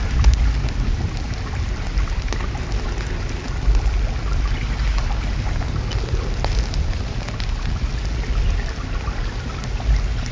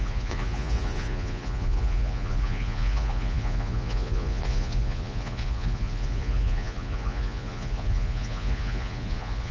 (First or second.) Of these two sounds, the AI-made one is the second